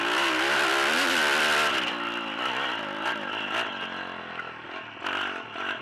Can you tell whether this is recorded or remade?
recorded